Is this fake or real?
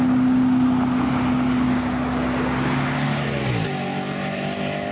real